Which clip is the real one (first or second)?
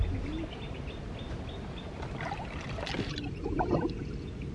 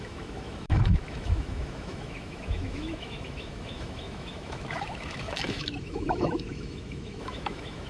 first